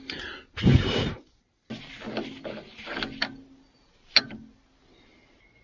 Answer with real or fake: real